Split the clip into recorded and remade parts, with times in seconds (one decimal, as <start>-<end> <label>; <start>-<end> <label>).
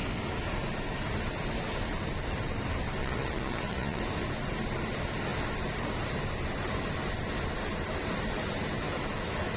0.0-3.0 recorded; 3.0-4.0 remade; 4.0-9.6 recorded